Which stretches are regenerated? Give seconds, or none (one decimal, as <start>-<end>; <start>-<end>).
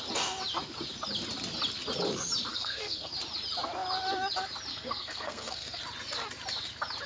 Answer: 2.5-3.1; 4.7-5.8